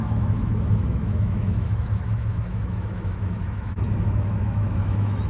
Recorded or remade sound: remade